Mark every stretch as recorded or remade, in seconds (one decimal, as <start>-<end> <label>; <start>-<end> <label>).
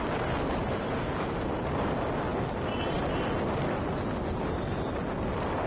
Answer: 0.0-5.7 recorded